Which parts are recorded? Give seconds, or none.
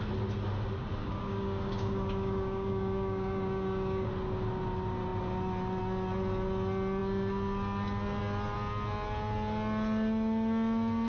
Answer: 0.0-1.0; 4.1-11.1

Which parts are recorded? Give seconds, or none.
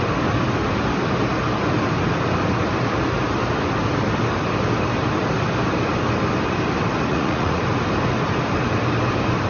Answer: 0.0-7.1; 7.6-9.5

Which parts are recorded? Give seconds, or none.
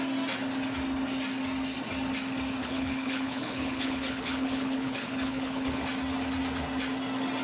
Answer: 0.0-2.6; 5.8-7.4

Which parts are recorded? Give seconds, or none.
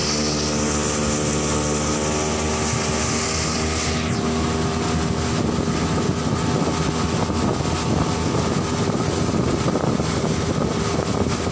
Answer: 0.0-11.5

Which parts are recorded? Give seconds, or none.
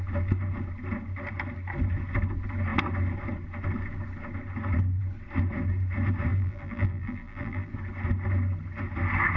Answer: 0.0-6.3; 7.7-9.4